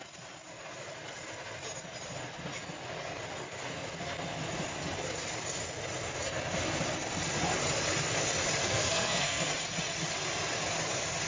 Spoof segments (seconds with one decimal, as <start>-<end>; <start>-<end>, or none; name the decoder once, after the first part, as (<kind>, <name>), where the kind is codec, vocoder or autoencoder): 8.6-9.5 (codec, SNAC)

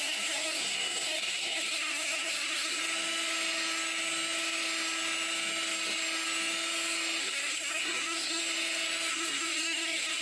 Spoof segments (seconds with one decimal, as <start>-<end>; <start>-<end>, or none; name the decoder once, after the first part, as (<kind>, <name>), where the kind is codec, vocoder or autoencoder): 0.0-2.8 (codec, SNAC); 7.2-8.4; 9.1-10.2

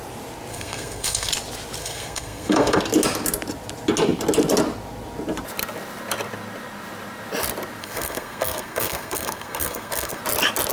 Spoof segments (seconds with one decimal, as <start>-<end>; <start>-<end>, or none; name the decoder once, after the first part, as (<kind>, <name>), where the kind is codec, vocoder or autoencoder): 0.5-1.3 (codec, SNAC); 1.8-2.8; 7.8-10.2

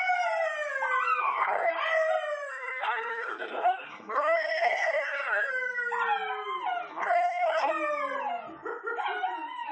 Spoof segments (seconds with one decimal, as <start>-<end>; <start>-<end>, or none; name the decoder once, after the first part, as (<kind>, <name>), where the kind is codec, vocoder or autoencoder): 1.2-1.7 (codec, SNAC); 2.5-5.5; 6.9-7.7